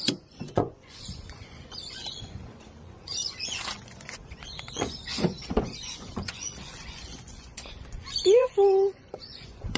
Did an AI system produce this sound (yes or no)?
yes